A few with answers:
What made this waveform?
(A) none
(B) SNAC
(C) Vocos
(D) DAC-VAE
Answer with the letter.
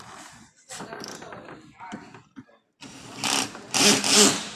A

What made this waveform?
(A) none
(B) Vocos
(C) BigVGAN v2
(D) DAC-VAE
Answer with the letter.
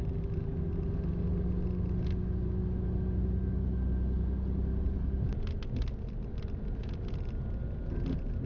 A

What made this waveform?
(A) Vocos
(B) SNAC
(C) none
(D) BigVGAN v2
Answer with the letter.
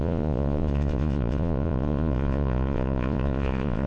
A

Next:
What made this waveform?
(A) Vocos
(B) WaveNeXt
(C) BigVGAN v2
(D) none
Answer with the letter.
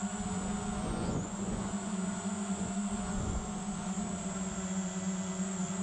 A